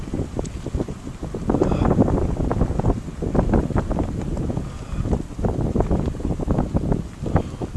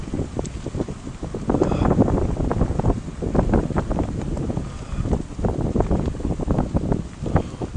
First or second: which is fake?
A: second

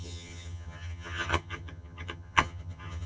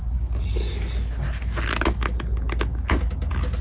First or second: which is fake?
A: first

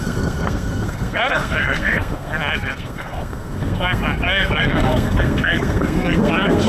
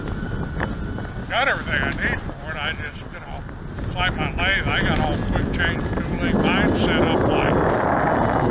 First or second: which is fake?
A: first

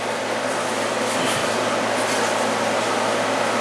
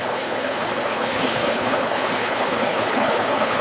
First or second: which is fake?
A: second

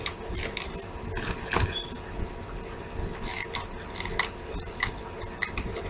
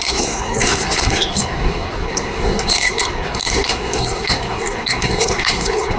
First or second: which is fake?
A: second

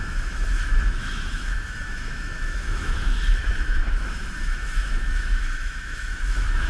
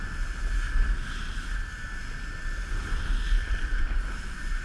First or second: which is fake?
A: first